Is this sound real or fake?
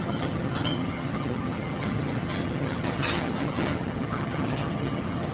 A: fake